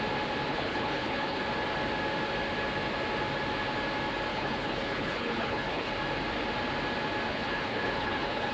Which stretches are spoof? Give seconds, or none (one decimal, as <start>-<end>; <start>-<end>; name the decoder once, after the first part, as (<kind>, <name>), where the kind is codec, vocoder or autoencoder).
0.5-1.4 (codec, HILCodec); 4.3-5.9; 7.3-8.5